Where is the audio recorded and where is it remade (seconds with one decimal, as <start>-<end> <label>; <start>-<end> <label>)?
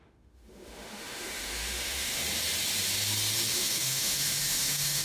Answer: 0.0-2.2 remade; 2.2-3.5 recorded; 3.5-5.0 remade